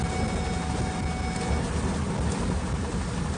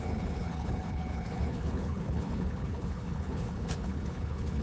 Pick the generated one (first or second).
second